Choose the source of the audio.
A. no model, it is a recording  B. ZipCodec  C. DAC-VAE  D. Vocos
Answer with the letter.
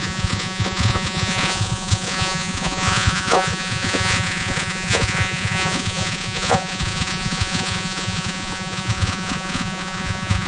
D